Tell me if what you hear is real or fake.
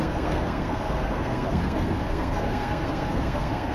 fake